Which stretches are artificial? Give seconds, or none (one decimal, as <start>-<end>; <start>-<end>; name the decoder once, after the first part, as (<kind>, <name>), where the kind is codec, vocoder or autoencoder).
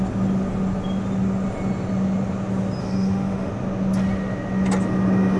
2.8-3.5 (autoencoder, DAC-VAE)